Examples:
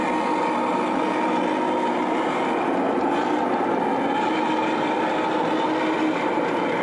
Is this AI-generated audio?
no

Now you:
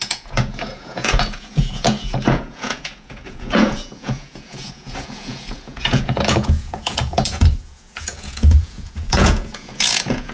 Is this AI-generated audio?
yes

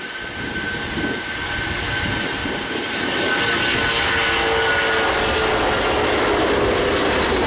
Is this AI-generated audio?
no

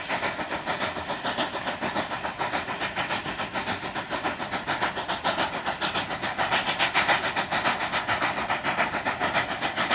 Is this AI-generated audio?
no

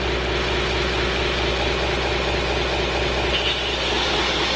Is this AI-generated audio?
no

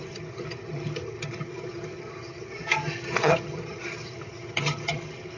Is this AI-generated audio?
yes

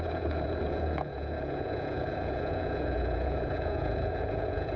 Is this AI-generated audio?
yes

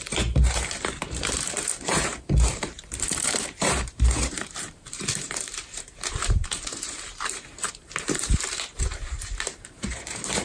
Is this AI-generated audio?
yes